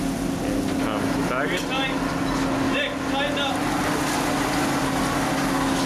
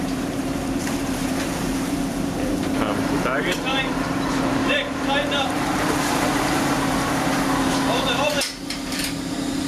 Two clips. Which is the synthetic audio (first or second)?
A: second